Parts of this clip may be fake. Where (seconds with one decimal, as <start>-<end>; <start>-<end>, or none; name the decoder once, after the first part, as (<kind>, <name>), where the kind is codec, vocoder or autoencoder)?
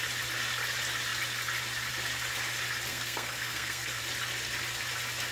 2.9-4.0 (codec, SNAC)